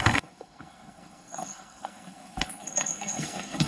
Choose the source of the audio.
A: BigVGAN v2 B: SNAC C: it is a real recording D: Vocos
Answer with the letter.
B